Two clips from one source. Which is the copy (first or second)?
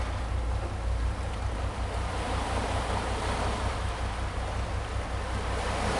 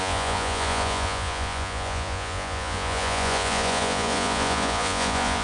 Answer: second